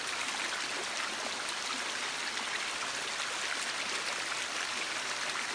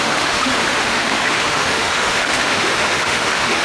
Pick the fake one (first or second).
second